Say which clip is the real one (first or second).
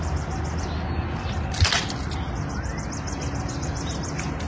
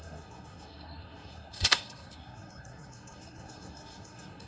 first